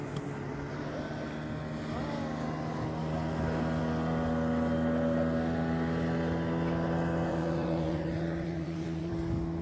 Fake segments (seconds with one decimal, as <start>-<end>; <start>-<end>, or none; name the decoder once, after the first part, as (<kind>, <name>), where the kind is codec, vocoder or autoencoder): 7.3-9.1 (vocoder, Vocos)